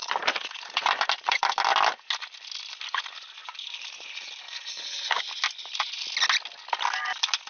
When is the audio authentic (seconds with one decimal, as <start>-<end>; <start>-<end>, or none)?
1.5-3.4; 5.2-7.5